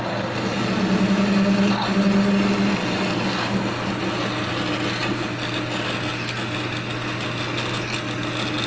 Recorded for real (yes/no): yes